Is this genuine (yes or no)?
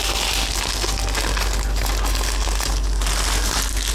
yes